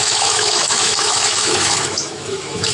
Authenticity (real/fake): fake